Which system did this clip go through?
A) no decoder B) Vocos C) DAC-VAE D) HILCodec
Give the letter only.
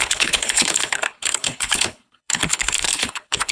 D